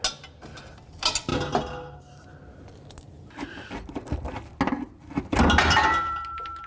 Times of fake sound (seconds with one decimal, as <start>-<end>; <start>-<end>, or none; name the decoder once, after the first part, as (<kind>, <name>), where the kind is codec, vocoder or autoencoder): none